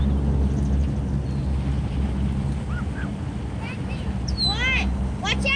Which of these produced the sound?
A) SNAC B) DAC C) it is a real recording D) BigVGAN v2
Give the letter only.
C